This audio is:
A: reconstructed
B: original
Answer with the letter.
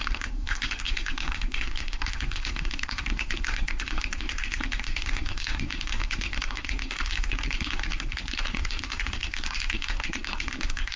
A